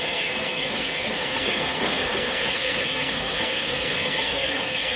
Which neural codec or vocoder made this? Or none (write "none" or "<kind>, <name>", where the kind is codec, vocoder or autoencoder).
codec, SNAC